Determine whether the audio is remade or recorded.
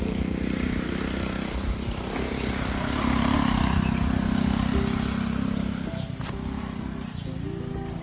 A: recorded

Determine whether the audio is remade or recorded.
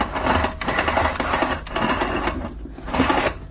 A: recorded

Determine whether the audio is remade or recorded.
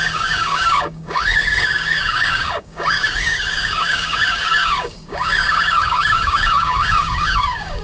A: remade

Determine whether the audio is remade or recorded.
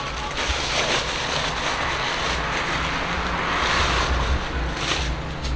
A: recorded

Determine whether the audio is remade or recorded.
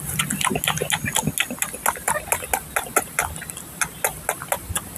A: recorded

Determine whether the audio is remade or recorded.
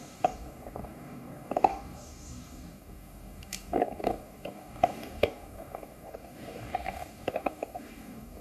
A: remade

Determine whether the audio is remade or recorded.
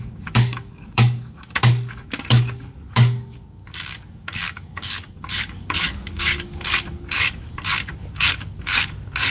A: remade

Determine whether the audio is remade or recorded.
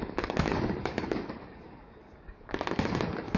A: remade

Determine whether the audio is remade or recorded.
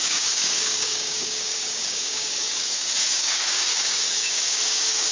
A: remade